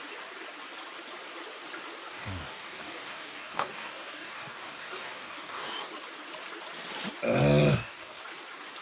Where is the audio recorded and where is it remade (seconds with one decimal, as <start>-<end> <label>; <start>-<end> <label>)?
0.0-2.1 recorded; 2.1-5.7 remade; 5.7-7.7 recorded; 7.7-8.2 remade; 8.2-8.8 recorded